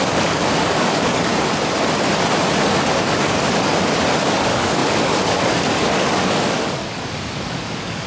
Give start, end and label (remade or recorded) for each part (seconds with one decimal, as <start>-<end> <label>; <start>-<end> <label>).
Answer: 0.0-1.3 remade; 1.3-3.0 recorded; 3.0-3.7 remade; 3.7-4.2 recorded; 4.2-8.1 remade